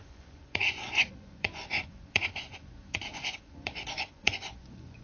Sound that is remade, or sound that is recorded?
remade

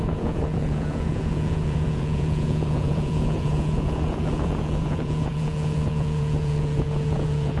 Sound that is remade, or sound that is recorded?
remade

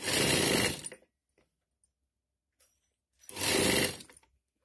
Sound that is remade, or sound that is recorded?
recorded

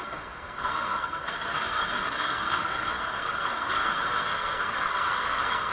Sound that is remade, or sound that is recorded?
remade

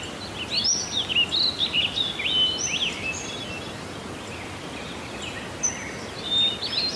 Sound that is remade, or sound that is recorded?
recorded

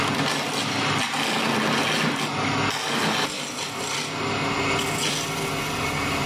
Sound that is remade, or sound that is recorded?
recorded